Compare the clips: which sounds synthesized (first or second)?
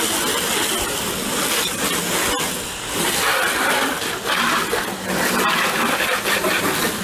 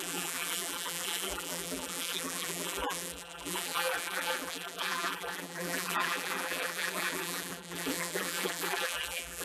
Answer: second